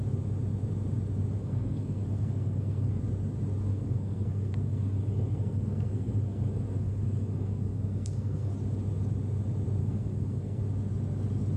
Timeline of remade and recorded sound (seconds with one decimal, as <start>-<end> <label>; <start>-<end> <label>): 0.0-1.4 recorded; 1.4-3.0 remade; 3.0-3.7 recorded; 3.7-8.5 remade; 8.5-9.8 recorded; 9.8-10.6 remade; 10.6-11.6 recorded